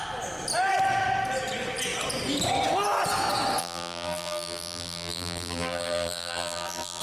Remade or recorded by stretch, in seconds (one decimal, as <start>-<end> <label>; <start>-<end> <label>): 0.0-3.6 recorded; 3.6-7.0 remade